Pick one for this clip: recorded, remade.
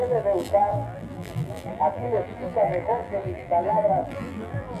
remade